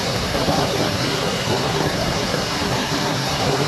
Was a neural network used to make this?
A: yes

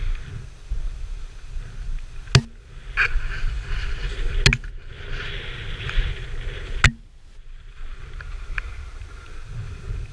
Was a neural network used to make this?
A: no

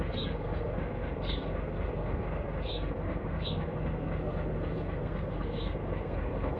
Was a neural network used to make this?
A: yes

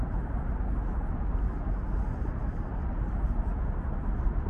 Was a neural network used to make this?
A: no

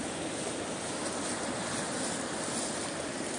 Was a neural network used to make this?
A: no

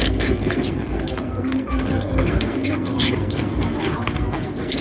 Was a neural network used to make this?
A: yes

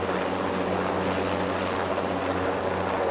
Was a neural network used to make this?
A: no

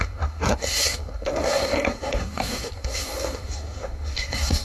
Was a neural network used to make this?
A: yes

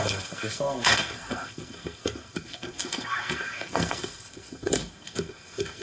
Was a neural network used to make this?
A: yes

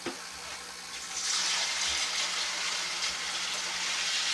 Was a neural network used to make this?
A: no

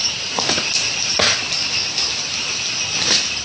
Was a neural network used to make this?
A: no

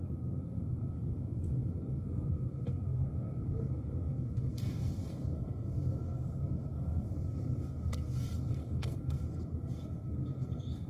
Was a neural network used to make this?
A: yes